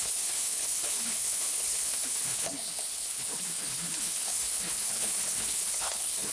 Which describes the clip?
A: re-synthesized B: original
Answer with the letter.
A